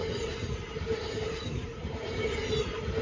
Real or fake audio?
real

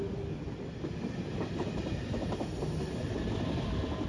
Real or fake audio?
real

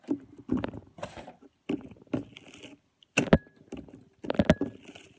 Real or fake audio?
real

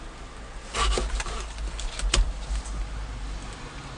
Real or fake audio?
real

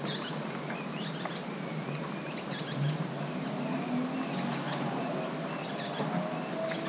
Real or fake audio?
real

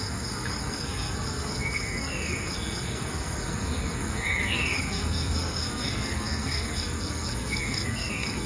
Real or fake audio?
fake